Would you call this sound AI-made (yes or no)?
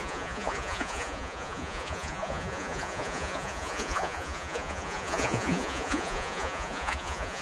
yes